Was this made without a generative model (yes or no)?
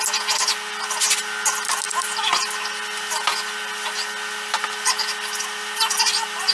yes